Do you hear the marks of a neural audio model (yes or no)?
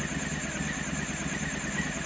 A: no